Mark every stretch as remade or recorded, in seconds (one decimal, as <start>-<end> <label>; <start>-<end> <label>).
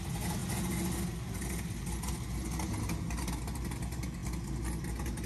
0.0-5.3 recorded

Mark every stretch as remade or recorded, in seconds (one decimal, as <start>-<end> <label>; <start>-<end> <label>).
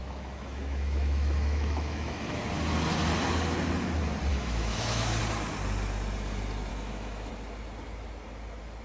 0.0-2.4 remade; 2.4-4.3 recorded; 4.3-5.2 remade; 5.2-6.7 recorded; 6.7-7.3 remade; 7.3-8.8 recorded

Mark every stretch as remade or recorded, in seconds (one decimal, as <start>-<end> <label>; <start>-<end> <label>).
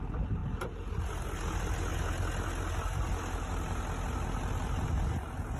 0.0-5.6 recorded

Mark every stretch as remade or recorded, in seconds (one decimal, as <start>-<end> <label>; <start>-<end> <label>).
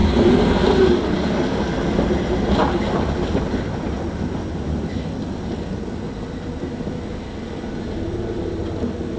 0.0-9.2 recorded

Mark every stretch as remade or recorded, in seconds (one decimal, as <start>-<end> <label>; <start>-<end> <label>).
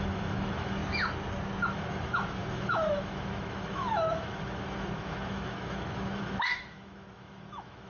0.0-0.8 remade; 0.8-1.7 recorded; 1.7-7.9 remade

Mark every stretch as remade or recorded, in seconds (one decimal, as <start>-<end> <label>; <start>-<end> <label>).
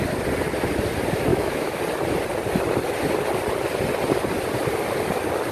0.0-1.3 recorded; 1.3-1.8 remade; 1.8-5.5 recorded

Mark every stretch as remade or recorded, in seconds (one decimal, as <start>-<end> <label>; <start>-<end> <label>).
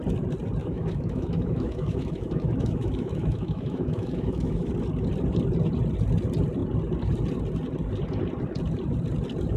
0.0-0.6 recorded; 0.6-4.7 remade; 4.7-9.6 recorded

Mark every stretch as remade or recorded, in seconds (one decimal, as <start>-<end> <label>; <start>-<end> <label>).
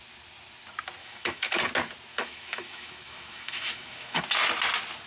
0.0-1.0 recorded; 1.0-1.6 remade; 1.6-2.1 recorded; 2.1-4.2 remade; 4.2-5.1 recorded